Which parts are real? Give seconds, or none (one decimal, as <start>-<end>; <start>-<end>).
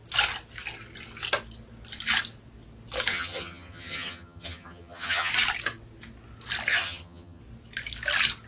0.0-3.1; 5.3-6.7; 7.4-8.5